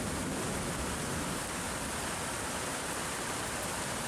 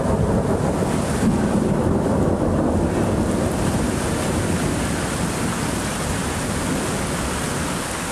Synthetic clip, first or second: first